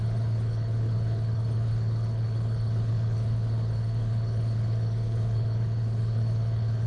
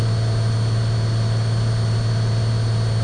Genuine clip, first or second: second